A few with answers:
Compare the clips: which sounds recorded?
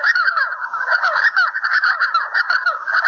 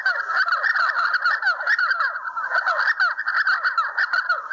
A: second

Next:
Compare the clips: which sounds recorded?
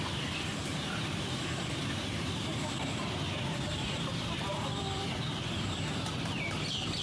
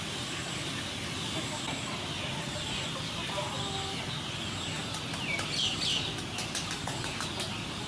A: second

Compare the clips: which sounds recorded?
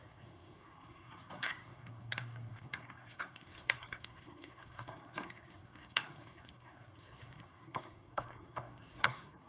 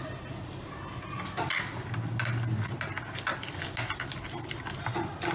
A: second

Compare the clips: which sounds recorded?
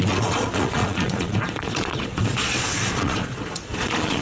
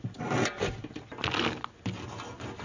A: second